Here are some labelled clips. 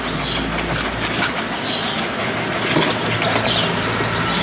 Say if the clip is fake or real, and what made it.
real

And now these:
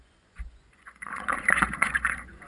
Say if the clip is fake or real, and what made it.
fake, vocoder, Vocos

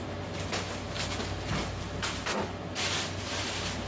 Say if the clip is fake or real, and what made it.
real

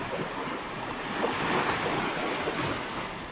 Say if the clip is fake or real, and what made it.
real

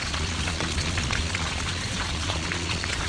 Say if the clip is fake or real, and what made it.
fake, vocoder, Vocos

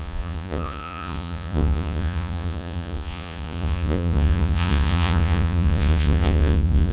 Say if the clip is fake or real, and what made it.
fake, vocoder, Vocos